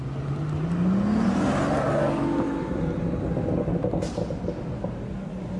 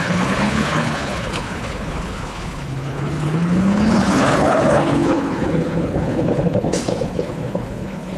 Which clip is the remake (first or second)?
second